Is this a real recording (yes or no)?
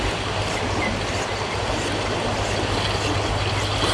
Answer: yes